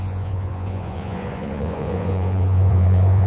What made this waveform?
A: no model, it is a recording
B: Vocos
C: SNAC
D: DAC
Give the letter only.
B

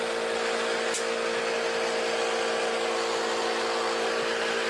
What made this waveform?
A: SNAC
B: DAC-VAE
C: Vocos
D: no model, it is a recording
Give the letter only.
D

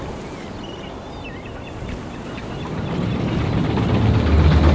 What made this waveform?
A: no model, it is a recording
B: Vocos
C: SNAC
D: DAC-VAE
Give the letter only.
A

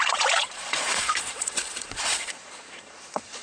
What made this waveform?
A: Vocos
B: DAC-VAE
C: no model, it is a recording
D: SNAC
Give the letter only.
A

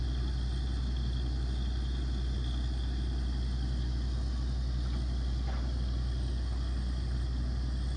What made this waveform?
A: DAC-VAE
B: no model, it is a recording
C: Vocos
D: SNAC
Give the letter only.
B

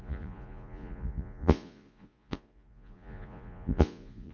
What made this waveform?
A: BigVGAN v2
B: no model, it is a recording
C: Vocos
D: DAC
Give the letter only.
C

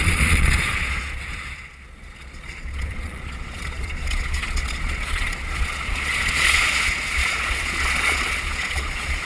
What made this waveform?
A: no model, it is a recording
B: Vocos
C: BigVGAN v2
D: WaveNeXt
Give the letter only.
B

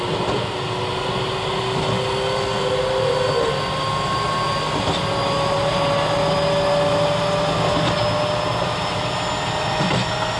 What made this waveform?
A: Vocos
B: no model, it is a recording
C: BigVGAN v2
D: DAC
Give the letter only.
B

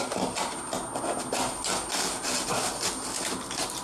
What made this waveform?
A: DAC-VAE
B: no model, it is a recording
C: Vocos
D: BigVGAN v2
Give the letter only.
B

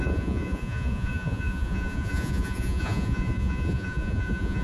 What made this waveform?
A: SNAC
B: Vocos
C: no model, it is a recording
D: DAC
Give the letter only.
B